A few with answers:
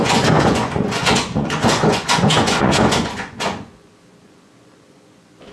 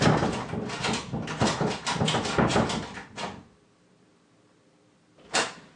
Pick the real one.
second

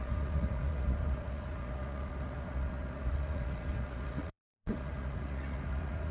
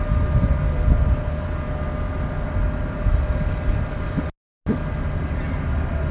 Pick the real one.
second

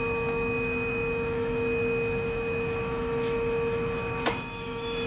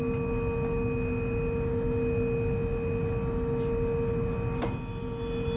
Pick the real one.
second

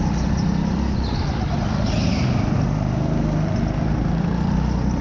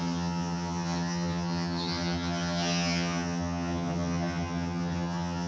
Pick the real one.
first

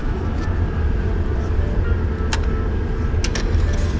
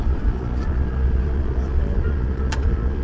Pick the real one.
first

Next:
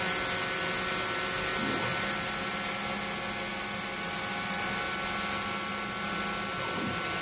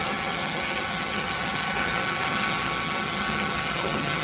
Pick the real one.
first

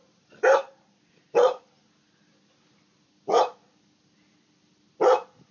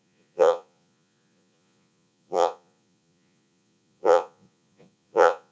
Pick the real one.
first